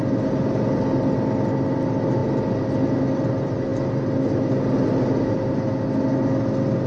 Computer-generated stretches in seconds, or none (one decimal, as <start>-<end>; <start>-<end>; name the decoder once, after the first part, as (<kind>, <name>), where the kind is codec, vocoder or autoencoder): none